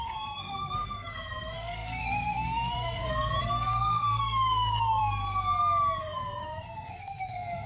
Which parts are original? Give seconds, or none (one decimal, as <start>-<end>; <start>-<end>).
5.0-6.0